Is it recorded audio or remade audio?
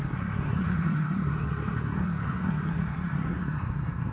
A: remade